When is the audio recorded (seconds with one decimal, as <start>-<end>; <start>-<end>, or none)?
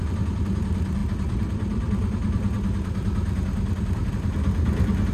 0.0-5.1